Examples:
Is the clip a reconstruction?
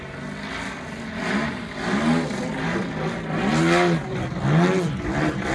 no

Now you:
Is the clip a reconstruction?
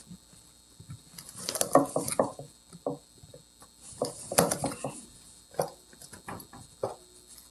no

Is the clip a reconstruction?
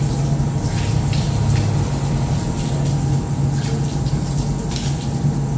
no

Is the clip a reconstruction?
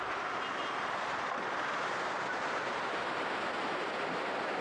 no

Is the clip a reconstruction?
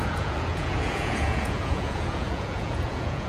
yes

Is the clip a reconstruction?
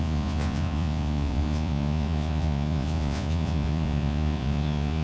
yes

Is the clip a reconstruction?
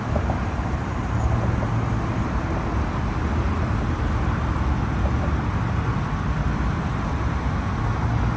no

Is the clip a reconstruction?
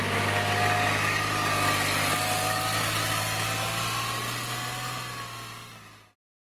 no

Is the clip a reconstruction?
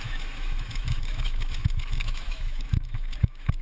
yes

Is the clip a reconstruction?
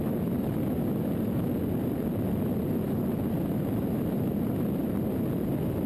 no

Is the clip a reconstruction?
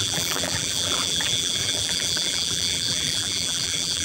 yes